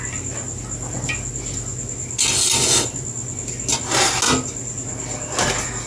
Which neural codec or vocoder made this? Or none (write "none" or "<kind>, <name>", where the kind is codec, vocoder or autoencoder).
none